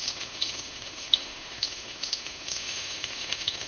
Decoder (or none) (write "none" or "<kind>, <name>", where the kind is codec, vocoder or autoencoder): autoencoder, DAC-VAE